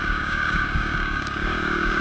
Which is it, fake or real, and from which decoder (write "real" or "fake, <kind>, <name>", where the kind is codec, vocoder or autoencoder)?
fake, codec, DAC